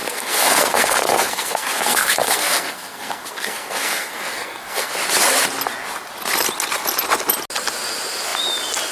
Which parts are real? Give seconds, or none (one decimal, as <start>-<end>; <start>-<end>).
4.9-8.9